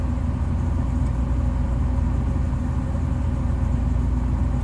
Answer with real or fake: real